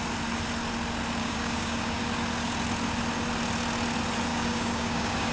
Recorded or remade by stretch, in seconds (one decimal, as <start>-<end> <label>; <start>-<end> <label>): 0.0-1.2 recorded; 1.2-2.0 remade; 2.0-4.3 recorded; 4.3-5.3 remade